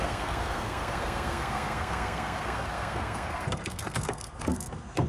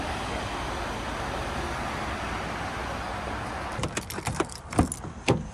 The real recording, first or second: second